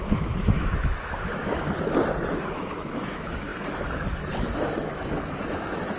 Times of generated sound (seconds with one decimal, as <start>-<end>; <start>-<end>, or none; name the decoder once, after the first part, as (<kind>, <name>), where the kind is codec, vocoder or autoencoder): 0.0-1.4 (autoencoder, DAC-VAE); 2.3-6.0